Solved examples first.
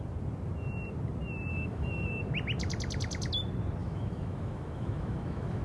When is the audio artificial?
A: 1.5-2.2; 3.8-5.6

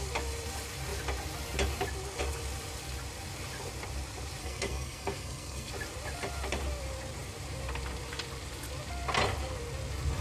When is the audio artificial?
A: 4.4-5.7

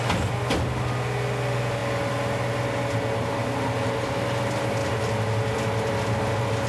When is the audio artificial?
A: none